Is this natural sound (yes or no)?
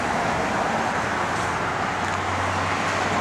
yes